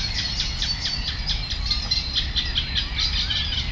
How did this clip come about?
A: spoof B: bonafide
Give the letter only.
B